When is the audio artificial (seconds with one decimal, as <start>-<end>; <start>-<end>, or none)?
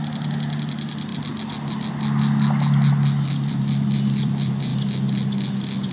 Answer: 0.0-1.1; 3.5-4.7